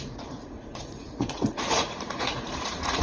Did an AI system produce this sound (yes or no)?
yes